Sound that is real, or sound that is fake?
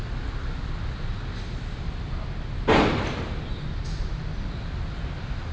real